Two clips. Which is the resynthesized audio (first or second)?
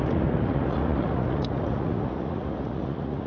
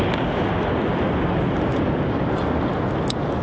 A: first